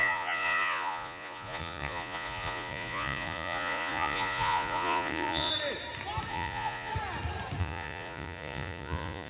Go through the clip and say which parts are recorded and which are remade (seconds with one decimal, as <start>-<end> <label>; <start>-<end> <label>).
0.0-5.5 remade; 5.5-6.3 recorded; 6.3-6.9 remade; 6.9-7.6 recorded; 7.6-9.3 remade